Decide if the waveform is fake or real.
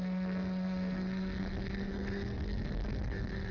fake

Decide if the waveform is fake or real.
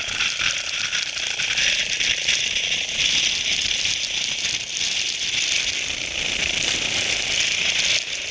real